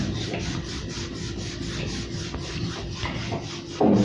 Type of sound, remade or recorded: recorded